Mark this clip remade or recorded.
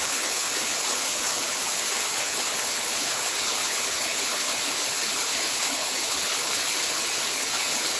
remade